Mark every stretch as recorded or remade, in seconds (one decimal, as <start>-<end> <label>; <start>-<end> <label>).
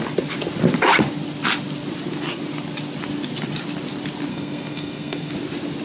0.0-4.3 recorded; 4.3-5.3 remade; 5.3-5.8 recorded